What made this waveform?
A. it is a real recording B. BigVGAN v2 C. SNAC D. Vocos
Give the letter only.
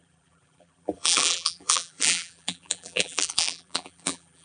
B